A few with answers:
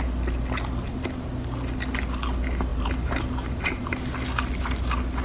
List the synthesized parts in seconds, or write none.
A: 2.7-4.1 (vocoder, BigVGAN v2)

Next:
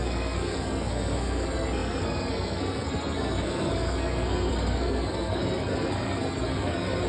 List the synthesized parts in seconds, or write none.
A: 0.0-7.1 (codec, SNAC)

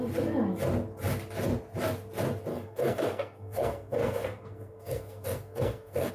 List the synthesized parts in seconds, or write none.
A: 2.5-6.1 (codec, SNAC)

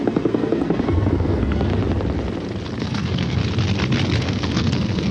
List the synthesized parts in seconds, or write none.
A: 0.0-1.7 (codec, SNAC); 2.8-3.4; 4.2-5.1

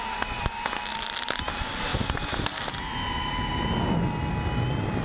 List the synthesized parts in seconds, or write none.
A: none

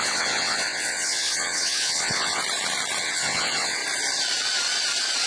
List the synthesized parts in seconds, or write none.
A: 0.0-2.4 (vocoder, WaveNeXt); 3.0-3.8

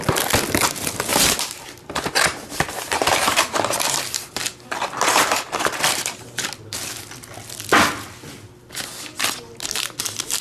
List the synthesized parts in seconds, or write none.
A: 1.1-3.6 (vocoder, BigVGAN v2); 5.1-6.4